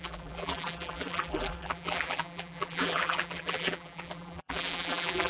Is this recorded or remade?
remade